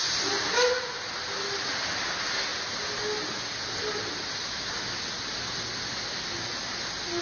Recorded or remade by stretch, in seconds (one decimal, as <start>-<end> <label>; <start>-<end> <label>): 0.0-7.2 recorded